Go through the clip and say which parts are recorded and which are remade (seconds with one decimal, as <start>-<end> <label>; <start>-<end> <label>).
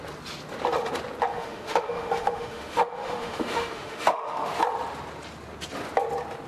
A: 0.0-1.3 recorded; 1.3-4.5 remade; 4.5-6.5 recorded